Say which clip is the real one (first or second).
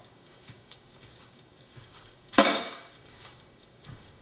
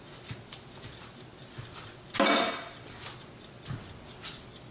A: second